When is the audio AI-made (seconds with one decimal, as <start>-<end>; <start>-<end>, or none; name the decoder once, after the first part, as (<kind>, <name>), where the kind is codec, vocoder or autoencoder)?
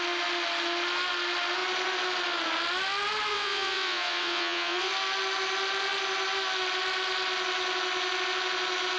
3.3-4.9 (vocoder, WaveNeXt)